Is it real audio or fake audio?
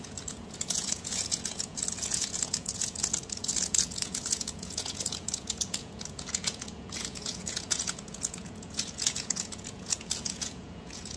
fake